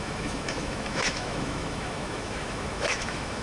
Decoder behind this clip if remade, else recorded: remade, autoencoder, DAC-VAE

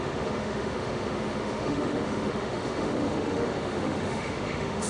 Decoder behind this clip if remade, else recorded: remade, autoencoder, DAC-VAE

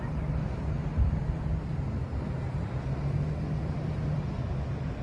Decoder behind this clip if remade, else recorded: recorded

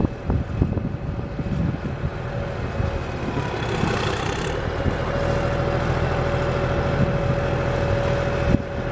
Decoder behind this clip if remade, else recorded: recorded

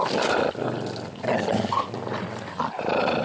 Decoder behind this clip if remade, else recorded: recorded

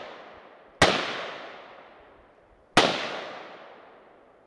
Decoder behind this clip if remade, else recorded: recorded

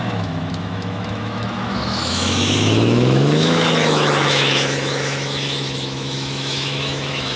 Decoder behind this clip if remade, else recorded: remade, autoencoder, DAC-VAE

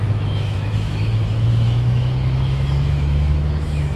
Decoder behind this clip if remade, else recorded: remade, autoencoder, DAC-VAE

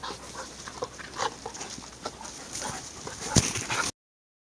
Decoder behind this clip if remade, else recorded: recorded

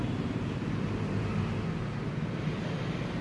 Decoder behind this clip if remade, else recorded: recorded